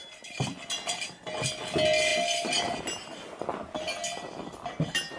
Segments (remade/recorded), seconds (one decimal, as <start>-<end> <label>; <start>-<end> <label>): 0.0-5.2 recorded